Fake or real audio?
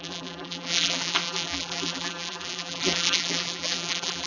fake